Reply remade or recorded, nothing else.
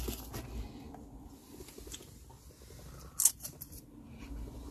recorded